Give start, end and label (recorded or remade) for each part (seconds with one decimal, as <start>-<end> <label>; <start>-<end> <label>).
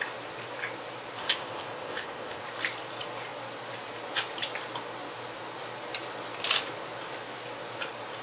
0.0-1.2 recorded; 1.2-2.4 remade; 2.4-8.2 recorded